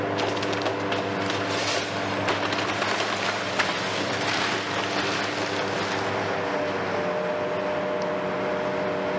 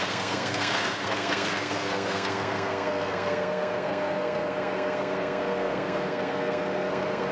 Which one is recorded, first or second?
first